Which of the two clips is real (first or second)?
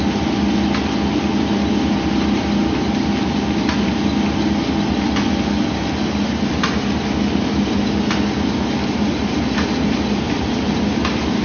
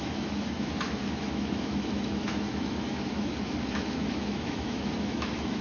first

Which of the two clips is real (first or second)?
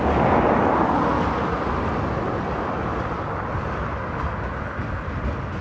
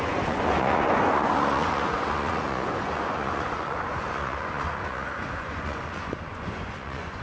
first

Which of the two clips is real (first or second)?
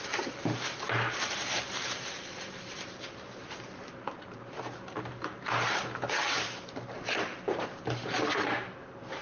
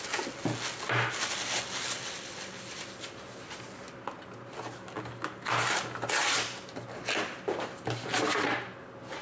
second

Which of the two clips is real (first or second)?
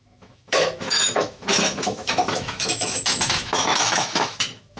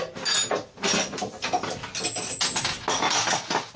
second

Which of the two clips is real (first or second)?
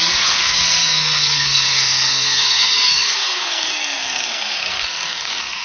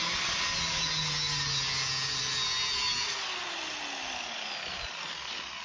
second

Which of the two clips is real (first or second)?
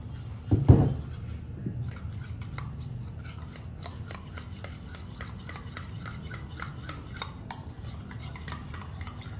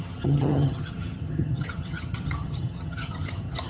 first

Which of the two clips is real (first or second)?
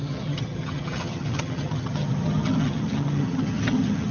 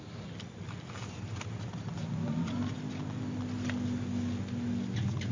second